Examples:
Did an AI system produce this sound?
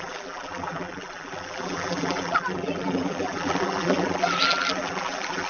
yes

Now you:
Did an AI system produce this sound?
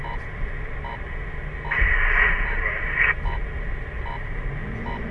no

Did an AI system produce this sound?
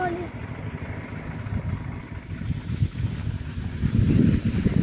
no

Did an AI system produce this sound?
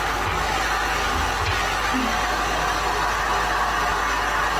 no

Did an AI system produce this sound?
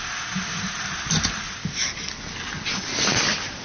no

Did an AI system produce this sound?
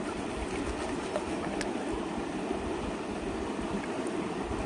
no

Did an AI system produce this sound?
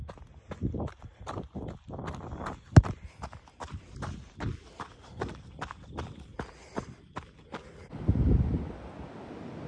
no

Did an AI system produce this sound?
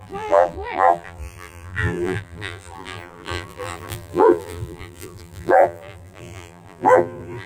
yes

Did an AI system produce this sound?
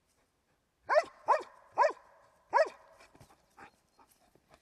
yes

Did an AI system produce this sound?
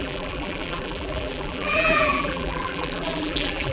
yes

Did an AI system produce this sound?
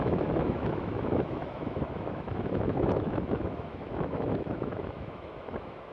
yes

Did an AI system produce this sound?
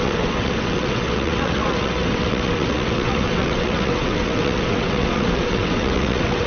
yes